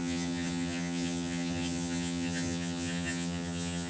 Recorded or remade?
remade